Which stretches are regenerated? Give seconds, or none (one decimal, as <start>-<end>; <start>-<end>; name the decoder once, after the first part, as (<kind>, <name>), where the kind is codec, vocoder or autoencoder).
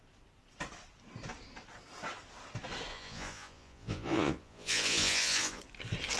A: 2.9-5.6 (vocoder, Vocos)